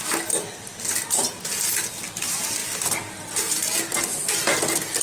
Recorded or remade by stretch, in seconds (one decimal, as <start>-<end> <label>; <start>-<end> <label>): 0.0-5.0 recorded